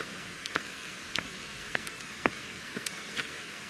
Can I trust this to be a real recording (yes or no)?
no